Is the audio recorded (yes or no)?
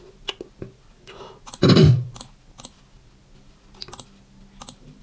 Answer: yes